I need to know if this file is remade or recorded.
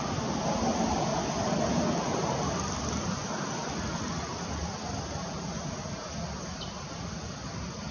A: recorded